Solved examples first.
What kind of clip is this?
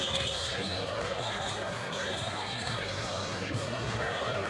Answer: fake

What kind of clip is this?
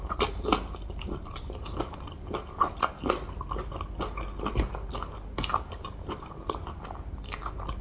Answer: real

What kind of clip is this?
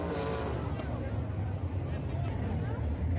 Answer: real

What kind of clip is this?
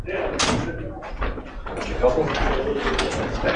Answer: real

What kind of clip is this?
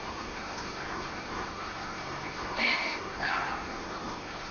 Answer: fake